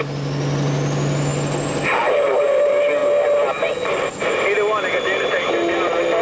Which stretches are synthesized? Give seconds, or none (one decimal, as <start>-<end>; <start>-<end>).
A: none

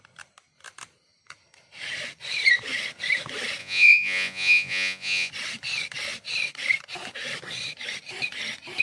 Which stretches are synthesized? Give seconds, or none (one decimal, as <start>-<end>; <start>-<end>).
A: 3.6-5.3

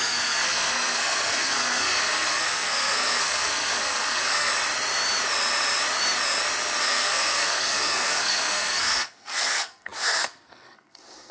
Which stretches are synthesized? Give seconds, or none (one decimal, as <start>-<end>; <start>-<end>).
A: 0.0-4.5; 6.8-11.3